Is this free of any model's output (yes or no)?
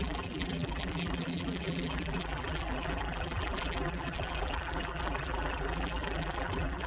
no